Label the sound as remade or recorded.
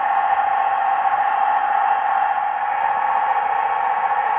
recorded